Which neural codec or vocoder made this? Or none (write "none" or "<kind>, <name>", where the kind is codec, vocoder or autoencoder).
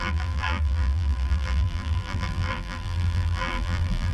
vocoder, BigVGAN v2